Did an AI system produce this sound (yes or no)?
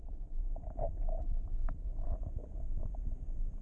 no